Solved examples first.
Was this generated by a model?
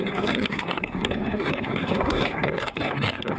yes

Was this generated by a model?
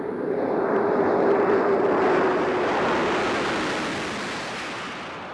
no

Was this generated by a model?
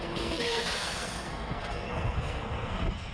yes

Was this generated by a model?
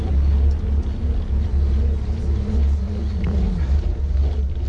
no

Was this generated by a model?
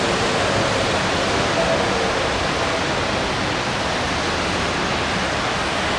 no